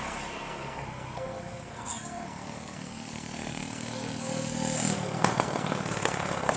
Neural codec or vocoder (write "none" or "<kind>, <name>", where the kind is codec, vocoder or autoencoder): codec, SNAC